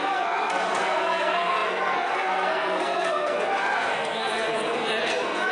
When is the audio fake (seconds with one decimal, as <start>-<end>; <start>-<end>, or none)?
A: 0.0-5.5